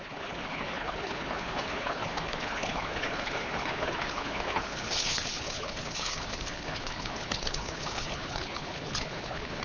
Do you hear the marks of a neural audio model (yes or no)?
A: yes